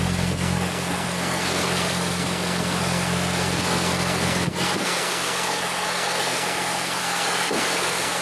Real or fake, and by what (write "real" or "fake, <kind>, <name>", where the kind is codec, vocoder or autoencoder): fake, codec, SNAC